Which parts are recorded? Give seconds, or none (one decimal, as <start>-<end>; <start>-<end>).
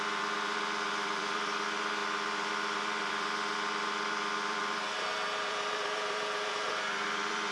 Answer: none